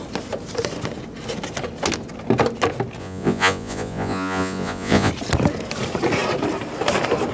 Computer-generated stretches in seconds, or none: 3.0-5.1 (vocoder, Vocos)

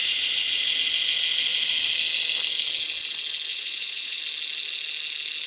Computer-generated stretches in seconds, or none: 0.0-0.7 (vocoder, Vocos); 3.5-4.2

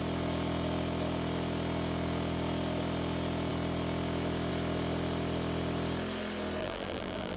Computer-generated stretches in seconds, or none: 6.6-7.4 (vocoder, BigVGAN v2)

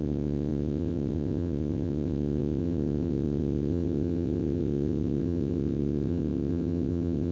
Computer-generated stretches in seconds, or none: 0.0-7.3 (vocoder, WaveNeXt)

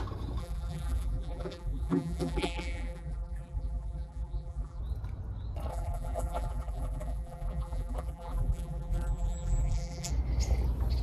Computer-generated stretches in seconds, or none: 0.4-4.8 (vocoder, BigVGAN v2); 5.7-10.1

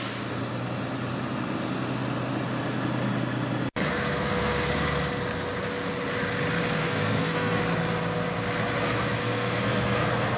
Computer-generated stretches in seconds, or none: 3.8-4.7 (codec, SNAC); 6.8-7.6; 9.2-10.4

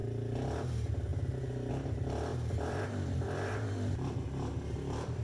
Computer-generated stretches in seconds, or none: 1.1-1.7 (vocoder, BigVGAN v2); 2.3-4.2